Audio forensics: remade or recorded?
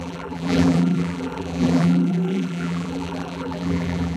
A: remade